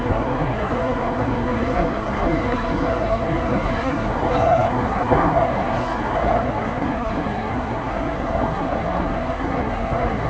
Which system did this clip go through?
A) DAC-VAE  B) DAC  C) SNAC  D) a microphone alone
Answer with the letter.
C